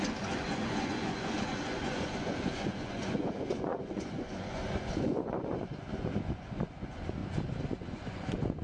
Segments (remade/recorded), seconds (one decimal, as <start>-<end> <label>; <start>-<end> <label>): 0.0-7.2 remade; 7.2-7.7 recorded; 7.7-8.6 remade